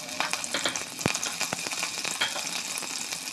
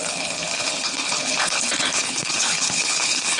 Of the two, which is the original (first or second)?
first